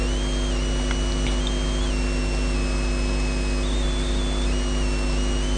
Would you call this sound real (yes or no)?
yes